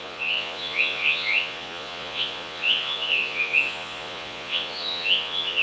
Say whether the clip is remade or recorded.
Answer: remade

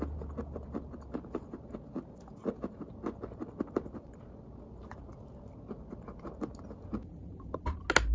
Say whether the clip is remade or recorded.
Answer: recorded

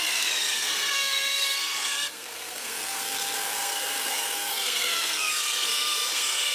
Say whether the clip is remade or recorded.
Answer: remade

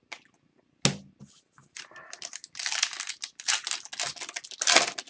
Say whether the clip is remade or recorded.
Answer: recorded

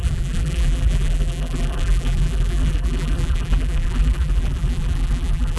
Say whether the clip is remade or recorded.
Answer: remade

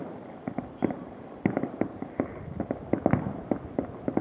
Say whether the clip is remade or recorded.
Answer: recorded